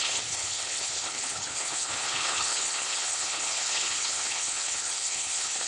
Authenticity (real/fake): fake